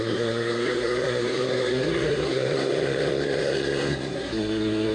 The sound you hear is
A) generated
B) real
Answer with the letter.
A